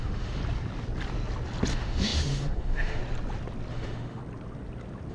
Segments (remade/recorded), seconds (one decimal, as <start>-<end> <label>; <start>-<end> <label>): 0.0-0.4 remade; 0.4-1.7 recorded; 1.7-3.0 remade; 3.0-3.7 recorded; 3.7-4.2 remade; 4.2-5.1 recorded